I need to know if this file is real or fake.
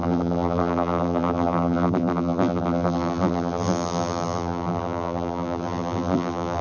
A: fake